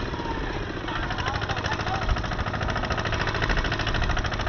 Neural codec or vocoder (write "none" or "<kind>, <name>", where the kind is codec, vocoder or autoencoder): none